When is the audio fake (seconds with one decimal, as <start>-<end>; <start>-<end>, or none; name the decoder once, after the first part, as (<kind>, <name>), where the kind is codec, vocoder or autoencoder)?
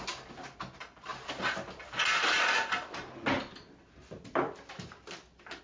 1.1-2.5 (vocoder, BigVGAN v2); 4.0-5.6